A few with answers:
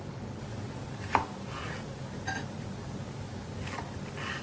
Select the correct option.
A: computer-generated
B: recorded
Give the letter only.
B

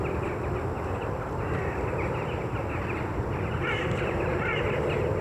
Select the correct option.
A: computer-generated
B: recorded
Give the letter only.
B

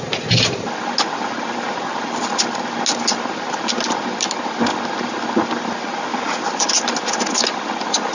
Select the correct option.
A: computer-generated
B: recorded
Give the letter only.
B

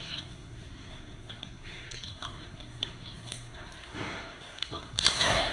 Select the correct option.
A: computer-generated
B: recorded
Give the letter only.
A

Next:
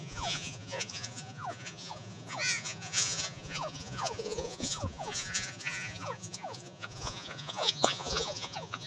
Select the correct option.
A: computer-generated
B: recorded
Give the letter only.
A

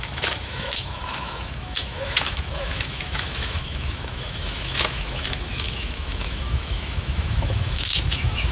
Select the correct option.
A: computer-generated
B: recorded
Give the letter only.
A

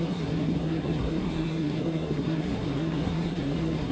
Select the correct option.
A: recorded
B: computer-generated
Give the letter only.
B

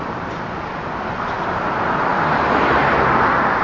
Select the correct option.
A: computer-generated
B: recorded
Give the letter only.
A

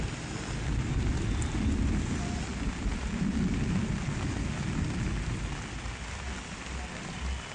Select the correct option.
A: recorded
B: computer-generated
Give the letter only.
A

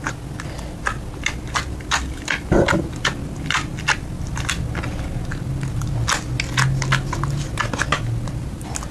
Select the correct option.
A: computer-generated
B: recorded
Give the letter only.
B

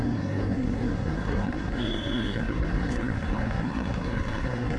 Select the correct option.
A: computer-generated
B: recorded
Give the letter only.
A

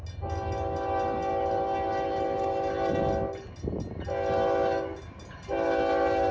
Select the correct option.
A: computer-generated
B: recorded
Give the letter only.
B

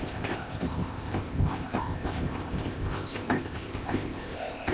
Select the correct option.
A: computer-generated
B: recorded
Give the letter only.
A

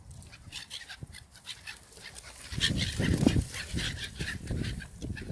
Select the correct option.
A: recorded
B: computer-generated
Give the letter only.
A